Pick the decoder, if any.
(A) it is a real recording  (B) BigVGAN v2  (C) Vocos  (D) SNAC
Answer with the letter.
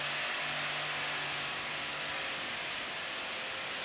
A